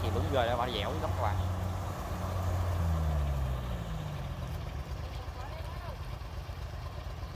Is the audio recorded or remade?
recorded